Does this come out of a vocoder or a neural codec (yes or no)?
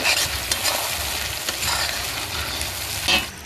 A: no